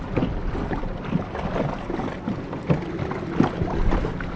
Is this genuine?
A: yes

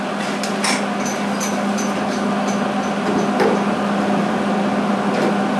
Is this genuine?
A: yes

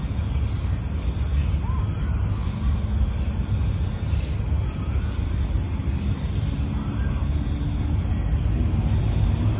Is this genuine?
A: yes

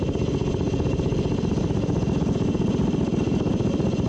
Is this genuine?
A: yes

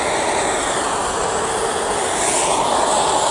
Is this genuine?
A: yes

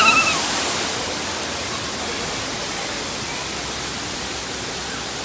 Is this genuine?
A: yes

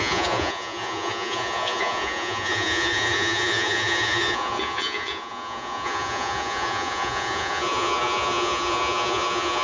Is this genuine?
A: no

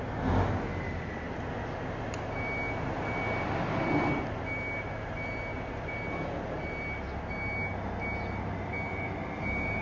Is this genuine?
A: yes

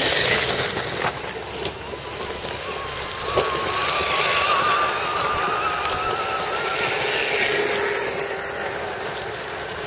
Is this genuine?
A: yes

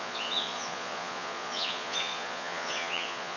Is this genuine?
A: no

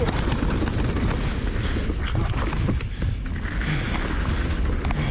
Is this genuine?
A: yes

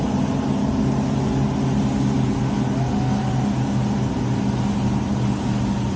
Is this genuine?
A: yes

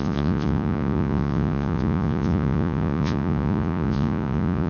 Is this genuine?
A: no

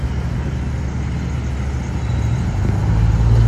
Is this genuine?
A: yes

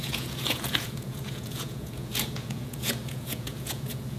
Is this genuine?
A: no